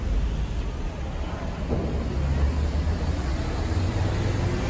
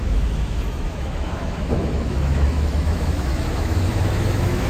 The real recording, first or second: first